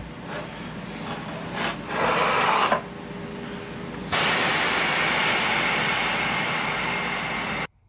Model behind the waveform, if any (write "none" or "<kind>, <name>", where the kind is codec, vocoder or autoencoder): none